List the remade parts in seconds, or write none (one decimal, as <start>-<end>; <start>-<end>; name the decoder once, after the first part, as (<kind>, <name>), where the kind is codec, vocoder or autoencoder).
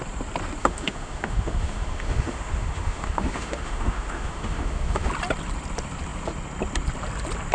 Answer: 0.6-5.1 (autoencoder, DAC-VAE)